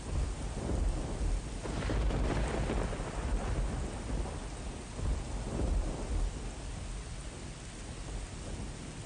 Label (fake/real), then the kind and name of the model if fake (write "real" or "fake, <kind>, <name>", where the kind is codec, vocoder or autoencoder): real